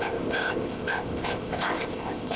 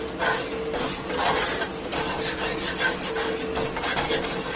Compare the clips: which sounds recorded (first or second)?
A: second